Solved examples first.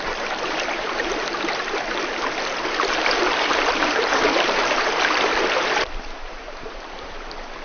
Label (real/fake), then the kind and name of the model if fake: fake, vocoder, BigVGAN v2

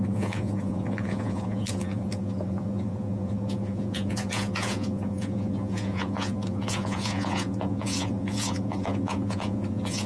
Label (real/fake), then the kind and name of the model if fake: fake, vocoder, Vocos